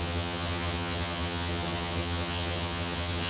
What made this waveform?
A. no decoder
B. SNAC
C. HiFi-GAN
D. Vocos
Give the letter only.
C